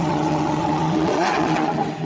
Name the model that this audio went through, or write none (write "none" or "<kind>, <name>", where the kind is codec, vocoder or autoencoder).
vocoder, WaveNeXt